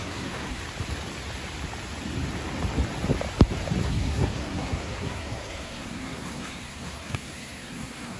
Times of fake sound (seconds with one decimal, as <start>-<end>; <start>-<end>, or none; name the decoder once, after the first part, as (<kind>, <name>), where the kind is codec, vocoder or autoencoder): 0.0-0.6 (codec, SNAC); 3.8-8.2